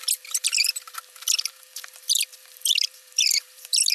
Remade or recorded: remade